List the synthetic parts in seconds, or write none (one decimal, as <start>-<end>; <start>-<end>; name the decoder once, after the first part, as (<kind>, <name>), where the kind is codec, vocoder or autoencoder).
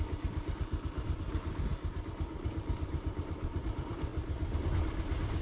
0.0-4.1 (vocoder, BigVGAN v2); 4.8-5.4